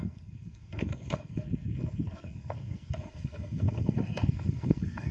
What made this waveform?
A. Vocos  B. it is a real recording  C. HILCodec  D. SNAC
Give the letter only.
D